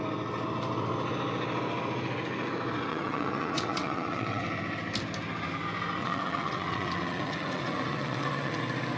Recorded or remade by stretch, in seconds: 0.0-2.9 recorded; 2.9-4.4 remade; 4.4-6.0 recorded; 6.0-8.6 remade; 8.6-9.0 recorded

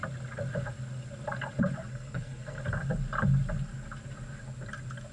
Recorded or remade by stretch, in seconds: 0.0-1.9 recorded; 1.9-2.6 remade; 2.6-5.1 recorded

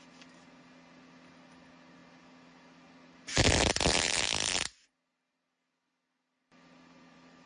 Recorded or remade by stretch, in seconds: 0.0-7.5 recorded

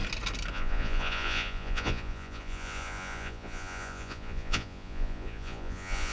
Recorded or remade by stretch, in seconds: 0.0-0.5 recorded; 0.5-6.1 remade